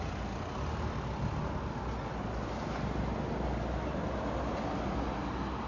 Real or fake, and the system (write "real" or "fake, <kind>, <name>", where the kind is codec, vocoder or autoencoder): real